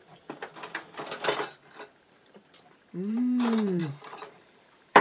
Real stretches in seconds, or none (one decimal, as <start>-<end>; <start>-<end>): 0.5-2.6